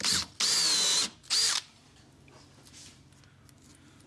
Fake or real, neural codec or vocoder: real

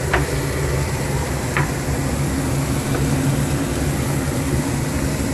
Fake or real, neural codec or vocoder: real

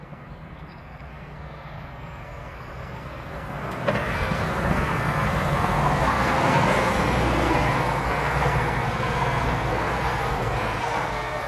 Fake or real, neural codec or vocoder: fake, codec, SNAC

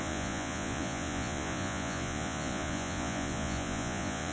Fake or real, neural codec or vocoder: fake, vocoder, Vocos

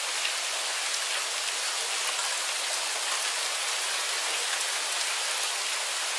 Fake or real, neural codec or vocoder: real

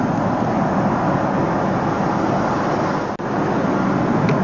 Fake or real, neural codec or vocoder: real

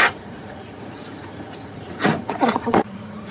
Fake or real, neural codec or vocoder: fake, vocoder, Vocos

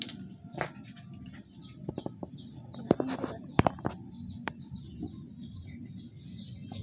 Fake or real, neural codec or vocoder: real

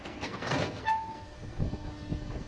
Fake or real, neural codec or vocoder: fake, codec, SNAC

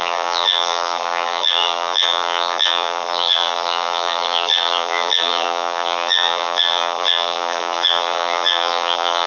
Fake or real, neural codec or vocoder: fake, vocoder, BigVGAN v2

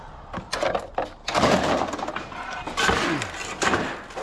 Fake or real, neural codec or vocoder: real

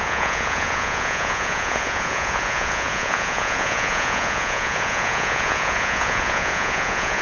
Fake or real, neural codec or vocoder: fake, vocoder, Vocos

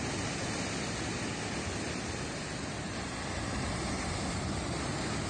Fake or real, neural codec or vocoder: real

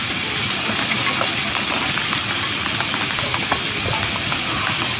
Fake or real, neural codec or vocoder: real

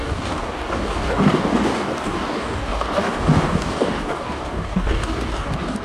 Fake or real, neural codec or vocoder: fake, codec, DAC